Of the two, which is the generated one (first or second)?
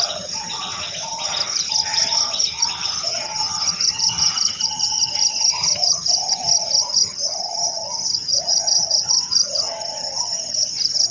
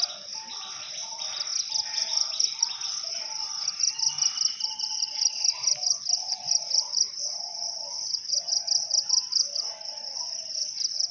first